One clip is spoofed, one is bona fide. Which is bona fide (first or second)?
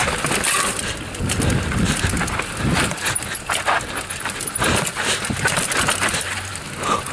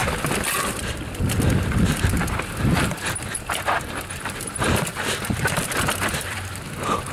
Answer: first